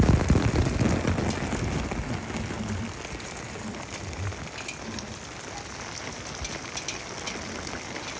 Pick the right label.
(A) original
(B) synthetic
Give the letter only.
A